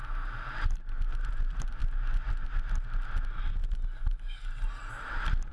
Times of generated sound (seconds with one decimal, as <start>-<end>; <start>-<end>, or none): none